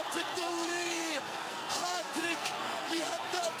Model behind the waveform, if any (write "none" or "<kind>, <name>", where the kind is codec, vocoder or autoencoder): codec, SNAC